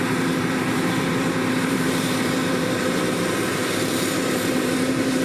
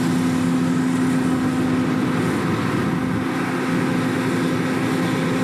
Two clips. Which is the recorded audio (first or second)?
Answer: second